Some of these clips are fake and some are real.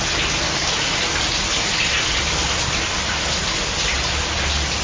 real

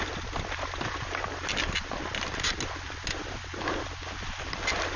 real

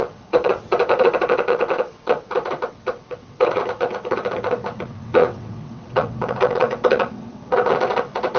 fake